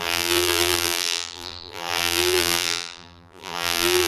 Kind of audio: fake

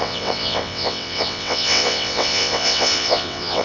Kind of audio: fake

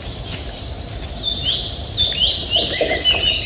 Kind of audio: real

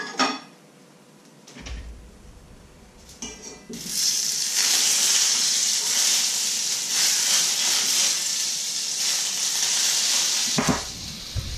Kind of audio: fake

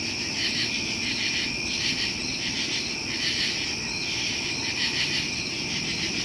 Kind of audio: real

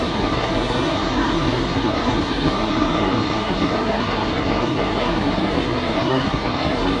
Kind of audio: fake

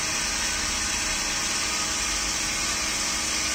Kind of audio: real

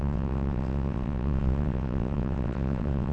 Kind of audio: fake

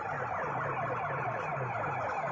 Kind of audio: real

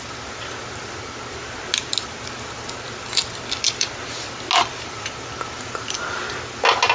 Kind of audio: real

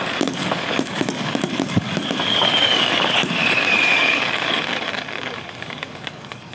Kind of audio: fake